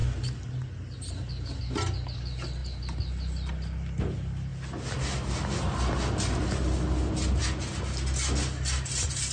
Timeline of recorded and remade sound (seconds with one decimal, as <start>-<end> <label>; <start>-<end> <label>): 0.0-9.3 recorded